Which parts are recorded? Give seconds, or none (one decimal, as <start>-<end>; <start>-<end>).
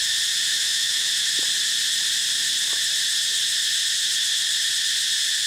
0.0-0.5; 1.1-5.5